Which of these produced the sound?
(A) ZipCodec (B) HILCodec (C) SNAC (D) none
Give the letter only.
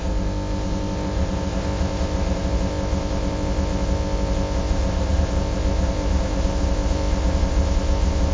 A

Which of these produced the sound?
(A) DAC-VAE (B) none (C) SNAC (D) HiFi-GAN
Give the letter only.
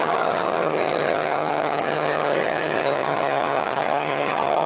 D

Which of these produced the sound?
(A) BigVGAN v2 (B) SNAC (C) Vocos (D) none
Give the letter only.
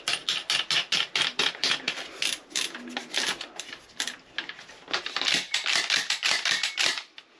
D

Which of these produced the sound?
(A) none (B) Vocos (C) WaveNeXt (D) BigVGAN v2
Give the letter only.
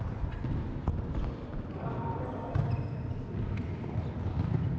A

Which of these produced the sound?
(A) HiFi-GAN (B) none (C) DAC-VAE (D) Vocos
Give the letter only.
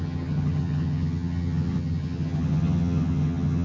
A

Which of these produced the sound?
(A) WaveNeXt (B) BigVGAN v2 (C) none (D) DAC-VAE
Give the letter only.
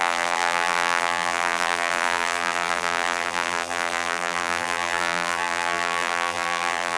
B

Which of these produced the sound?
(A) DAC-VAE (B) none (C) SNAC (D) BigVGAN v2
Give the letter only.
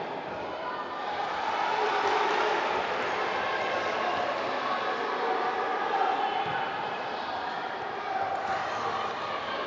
D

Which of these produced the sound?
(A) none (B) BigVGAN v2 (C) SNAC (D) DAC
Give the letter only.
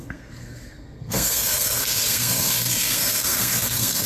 C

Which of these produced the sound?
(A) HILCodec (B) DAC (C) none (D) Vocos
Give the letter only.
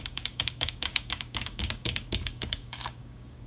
B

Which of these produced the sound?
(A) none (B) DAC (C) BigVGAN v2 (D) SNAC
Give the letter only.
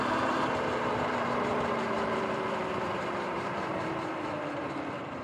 C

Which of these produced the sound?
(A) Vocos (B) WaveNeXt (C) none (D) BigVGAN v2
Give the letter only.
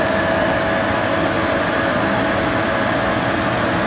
C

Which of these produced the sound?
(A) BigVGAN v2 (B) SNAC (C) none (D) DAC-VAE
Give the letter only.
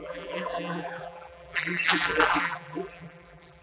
A